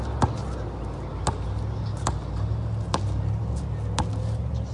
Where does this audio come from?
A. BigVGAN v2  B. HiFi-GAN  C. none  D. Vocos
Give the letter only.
C